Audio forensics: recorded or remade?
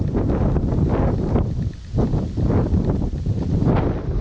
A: recorded